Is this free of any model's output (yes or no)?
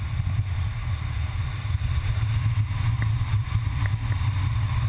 yes